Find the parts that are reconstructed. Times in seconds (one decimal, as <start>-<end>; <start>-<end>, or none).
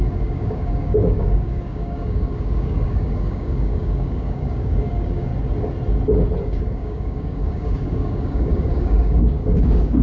0.0-5.3; 6.4-10.0